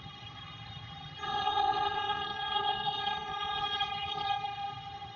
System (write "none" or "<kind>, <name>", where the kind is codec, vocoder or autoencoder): vocoder, HiFi-GAN